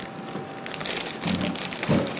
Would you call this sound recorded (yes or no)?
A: yes